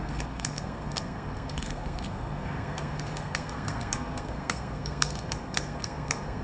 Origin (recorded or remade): remade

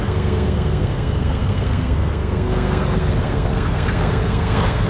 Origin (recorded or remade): remade